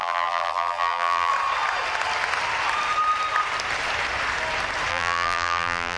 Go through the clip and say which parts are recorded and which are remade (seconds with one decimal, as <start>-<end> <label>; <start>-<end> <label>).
0.0-1.3 remade; 1.3-4.9 recorded; 4.9-6.0 remade